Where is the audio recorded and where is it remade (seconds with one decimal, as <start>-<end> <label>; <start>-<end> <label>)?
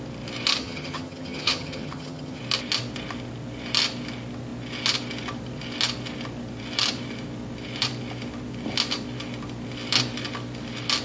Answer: 0.0-0.6 recorded; 0.6-2.4 remade; 2.4-11.0 recorded